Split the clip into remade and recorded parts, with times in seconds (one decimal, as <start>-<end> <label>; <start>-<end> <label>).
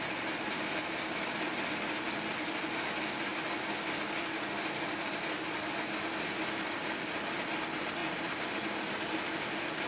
0.0-9.9 recorded